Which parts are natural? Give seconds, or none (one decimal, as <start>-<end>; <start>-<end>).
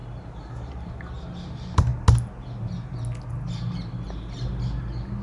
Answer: 0.0-5.2